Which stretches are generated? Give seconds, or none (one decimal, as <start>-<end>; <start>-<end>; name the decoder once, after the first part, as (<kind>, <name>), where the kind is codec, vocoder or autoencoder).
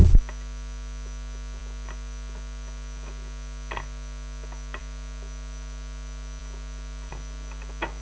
none